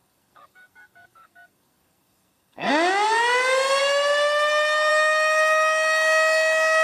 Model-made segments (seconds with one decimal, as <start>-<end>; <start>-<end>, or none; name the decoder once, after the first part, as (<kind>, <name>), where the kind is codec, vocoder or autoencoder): 0.0-2.7 (codec, SNAC)